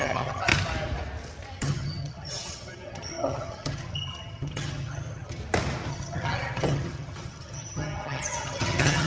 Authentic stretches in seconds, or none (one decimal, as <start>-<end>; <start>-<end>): 0.5-1.6; 5.4-5.9